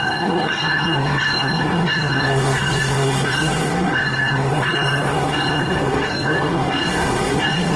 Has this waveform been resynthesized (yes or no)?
yes